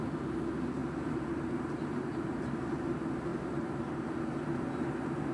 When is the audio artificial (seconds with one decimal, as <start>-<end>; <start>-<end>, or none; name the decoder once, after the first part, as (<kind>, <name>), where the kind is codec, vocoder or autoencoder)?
0.8-2.4 (vocoder, BigVGAN v2); 3.3-4.0